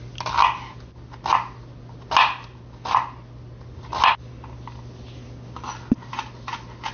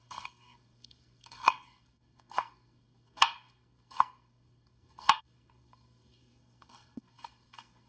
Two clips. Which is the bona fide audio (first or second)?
first